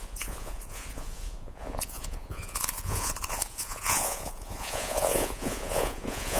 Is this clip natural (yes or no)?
no